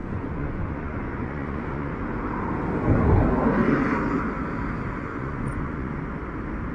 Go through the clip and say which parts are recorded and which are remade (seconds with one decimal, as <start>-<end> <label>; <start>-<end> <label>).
0.0-2.0 remade; 2.0-5.1 recorded; 5.1-6.0 remade; 6.0-6.7 recorded